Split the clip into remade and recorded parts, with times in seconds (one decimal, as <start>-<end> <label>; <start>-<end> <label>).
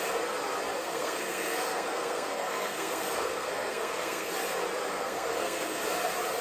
0.0-0.8 recorded; 0.8-4.3 remade; 4.3-4.9 recorded; 4.9-5.8 remade; 5.8-6.4 recorded